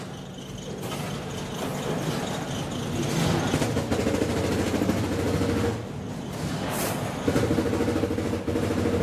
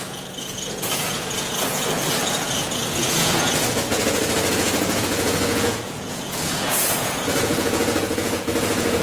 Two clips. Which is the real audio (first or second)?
first